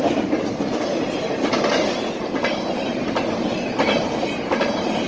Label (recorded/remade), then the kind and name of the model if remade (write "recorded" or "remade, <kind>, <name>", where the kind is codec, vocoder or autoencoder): remade, vocoder, BigVGAN v2